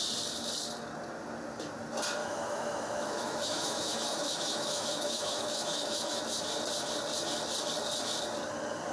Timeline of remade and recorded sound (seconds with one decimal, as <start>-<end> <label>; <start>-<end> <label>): 0.0-2.2 recorded; 2.2-6.2 remade; 6.2-8.9 recorded